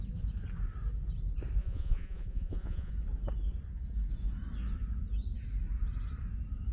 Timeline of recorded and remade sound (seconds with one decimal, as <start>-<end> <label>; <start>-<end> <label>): 0.0-1.6 recorded; 1.6-2.9 remade; 2.9-6.7 recorded